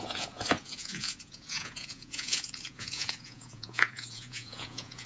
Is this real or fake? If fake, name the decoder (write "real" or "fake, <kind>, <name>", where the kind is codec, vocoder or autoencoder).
fake, vocoder, Vocos